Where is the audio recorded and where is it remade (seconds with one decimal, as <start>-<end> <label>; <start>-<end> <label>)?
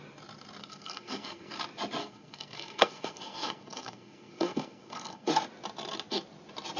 0.0-0.6 recorded; 0.6-1.5 remade; 1.5-2.0 recorded; 2.0-5.3 remade; 5.3-6.8 recorded